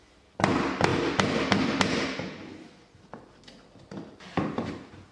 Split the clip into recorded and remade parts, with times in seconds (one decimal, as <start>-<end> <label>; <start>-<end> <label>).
0.0-5.1 recorded